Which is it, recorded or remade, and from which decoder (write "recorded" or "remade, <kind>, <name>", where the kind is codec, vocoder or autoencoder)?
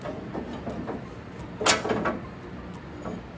recorded